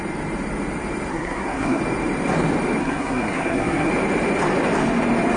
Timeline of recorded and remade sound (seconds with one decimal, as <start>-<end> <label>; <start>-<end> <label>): 0.0-1.1 recorded; 1.1-1.8 remade; 1.8-2.8 recorded; 2.8-3.9 remade; 3.9-5.4 recorded